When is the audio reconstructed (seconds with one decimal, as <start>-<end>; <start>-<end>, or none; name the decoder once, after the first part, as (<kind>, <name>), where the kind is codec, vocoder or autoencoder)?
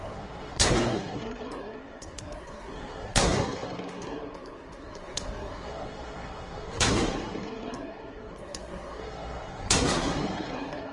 0.0-10.9 (codec, SNAC)